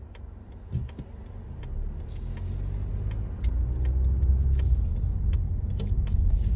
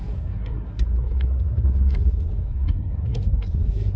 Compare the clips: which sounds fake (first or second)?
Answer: second